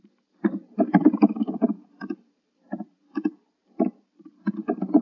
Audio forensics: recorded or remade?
remade